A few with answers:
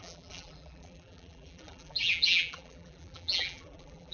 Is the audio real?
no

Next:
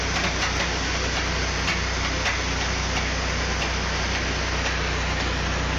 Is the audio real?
yes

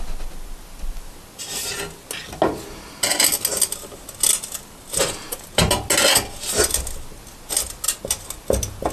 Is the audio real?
yes